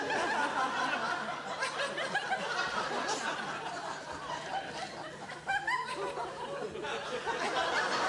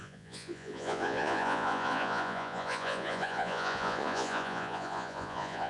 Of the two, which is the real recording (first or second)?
first